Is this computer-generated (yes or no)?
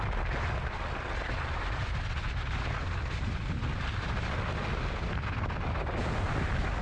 no